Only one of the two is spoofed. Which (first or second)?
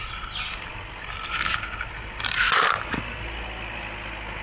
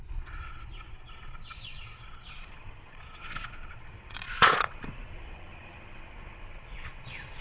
second